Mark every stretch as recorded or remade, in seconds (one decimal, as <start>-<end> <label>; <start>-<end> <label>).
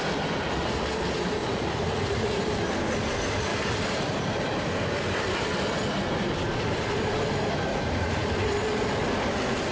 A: 0.0-1.4 recorded; 1.4-2.4 remade; 2.4-7.7 recorded; 7.7-8.3 remade; 8.3-9.7 recorded